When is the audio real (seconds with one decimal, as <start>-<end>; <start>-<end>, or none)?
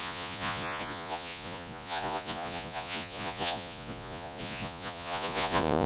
none